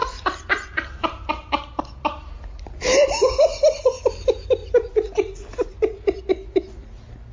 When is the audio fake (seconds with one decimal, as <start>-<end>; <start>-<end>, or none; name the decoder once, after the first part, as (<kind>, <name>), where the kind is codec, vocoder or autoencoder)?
0.0-1.5 (vocoder, BigVGAN v2); 4.6-6.2